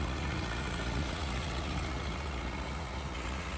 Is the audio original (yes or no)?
no